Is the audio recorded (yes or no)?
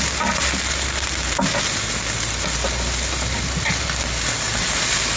yes